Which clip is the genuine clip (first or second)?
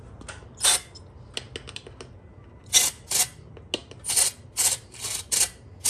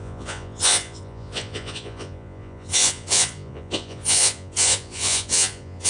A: first